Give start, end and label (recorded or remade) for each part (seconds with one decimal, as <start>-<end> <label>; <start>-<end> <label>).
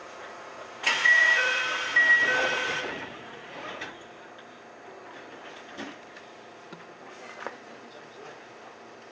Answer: 0.0-1.6 remade; 1.6-2.4 recorded; 2.4-3.9 remade; 3.9-9.1 recorded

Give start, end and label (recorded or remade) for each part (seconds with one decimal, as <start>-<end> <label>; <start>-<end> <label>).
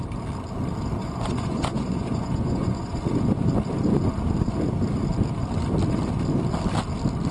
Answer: 0.0-1.0 recorded; 1.0-3.0 remade; 3.0-7.3 recorded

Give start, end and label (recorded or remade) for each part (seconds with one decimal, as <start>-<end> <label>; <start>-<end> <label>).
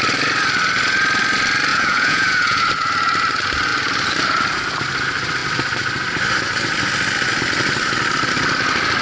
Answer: 0.0-1.7 recorded; 1.7-2.6 remade; 2.6-9.0 recorded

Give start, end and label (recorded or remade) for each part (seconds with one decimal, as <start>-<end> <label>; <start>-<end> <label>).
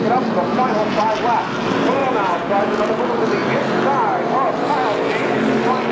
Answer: 0.0-0.5 recorded; 0.5-1.0 remade; 1.0-2.0 recorded; 2.0-3.0 remade; 3.0-5.9 recorded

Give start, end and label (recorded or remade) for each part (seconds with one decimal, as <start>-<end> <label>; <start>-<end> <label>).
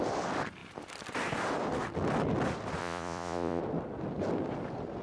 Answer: 0.0-2.8 recorded; 2.8-3.6 remade; 3.6-5.0 recorded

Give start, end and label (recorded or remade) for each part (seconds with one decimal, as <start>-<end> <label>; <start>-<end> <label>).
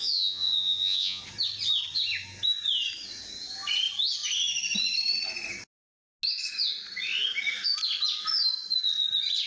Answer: 0.0-1.2 remade; 1.2-9.5 recorded